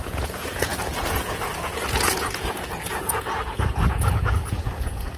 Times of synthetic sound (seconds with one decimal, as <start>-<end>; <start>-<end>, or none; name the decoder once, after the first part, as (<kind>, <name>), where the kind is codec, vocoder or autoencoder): 0.0-5.2 (vocoder, Vocos)